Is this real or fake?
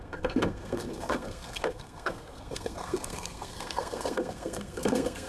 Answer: fake